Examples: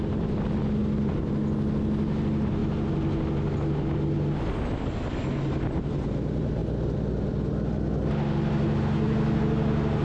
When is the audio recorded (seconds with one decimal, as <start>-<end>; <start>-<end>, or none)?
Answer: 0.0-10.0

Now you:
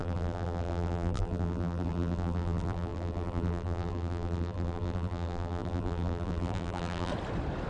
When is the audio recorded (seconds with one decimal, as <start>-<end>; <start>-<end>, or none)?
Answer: 7.1-7.7

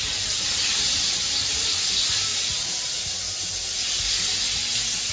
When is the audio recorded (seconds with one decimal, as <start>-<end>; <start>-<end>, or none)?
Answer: 0.0-5.1

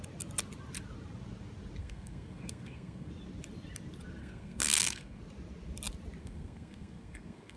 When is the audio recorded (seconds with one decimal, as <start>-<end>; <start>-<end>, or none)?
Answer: 0.0-1.8; 3.1-4.2; 5.2-6.2